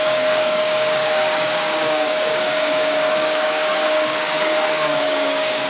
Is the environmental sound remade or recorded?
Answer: remade